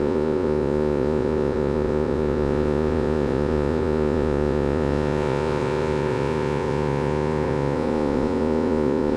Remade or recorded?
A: remade